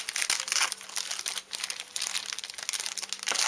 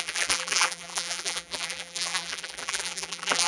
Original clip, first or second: first